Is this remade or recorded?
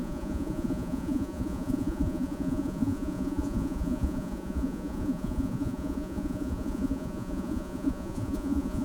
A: remade